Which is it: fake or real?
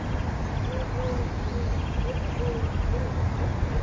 real